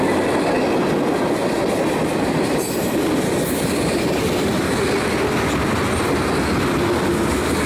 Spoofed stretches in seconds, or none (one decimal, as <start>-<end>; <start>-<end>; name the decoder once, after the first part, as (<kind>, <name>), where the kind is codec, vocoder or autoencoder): 1.4-3.9 (vocoder, BigVGAN v2)